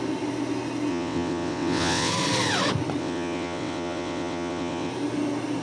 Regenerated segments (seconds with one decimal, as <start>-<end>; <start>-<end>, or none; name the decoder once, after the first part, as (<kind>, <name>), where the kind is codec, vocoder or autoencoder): 0.9-2.1 (vocoder, WaveNeXt); 3.0-4.9